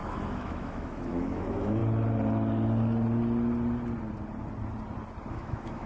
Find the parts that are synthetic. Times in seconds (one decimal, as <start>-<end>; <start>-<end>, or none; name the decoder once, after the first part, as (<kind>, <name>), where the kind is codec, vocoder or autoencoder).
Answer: 0.0-1.8 (autoencoder, DAC-VAE); 5.3-5.9